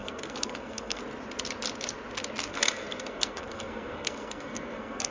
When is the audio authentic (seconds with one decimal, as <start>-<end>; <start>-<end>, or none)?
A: 1.0-2.5